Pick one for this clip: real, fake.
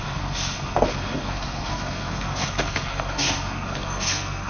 fake